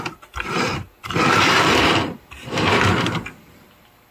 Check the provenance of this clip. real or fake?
fake